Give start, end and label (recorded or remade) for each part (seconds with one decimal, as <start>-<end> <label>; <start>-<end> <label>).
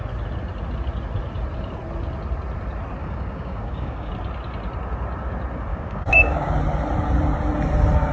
0.0-3.0 recorded; 3.0-4.1 remade; 4.1-5.7 recorded; 5.7-6.5 remade; 6.5-8.1 recorded